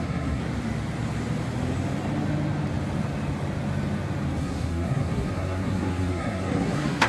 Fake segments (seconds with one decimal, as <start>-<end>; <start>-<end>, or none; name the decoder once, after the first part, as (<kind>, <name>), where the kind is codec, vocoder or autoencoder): 0.0-0.4 (codec, SNAC); 4.4-7.1

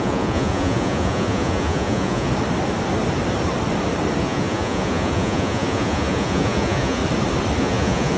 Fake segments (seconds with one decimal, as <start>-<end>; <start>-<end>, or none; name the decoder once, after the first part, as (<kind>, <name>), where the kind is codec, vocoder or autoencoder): 0.0-2.3 (vocoder, Vocos); 4.2-7.0; 7.6-8.2

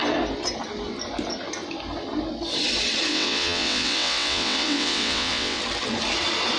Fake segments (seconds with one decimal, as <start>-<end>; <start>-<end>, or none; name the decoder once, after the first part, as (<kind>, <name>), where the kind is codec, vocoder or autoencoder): 3.1-5.6 (vocoder, WaveNeXt)

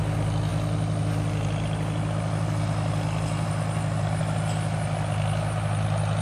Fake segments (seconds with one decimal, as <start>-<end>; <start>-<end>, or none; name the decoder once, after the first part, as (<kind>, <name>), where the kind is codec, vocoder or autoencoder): none

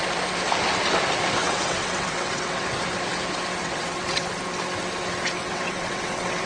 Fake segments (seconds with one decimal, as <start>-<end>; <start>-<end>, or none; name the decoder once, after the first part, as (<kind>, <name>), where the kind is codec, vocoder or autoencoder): 1.4-2.8 (vocoder, WaveNeXt); 3.6-4.3; 5.4-6.5